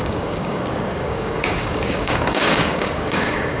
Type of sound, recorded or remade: remade